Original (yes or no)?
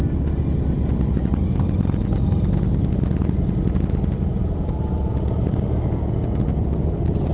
yes